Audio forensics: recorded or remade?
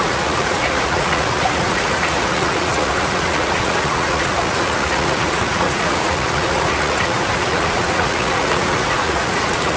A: remade